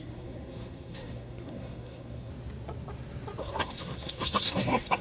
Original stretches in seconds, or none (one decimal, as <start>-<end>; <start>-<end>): 2.3-3.4